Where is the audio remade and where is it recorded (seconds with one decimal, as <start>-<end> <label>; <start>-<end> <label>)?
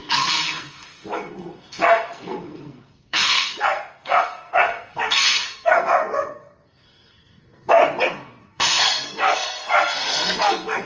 0.0-7.8 remade; 7.8-8.4 recorded; 8.4-10.9 remade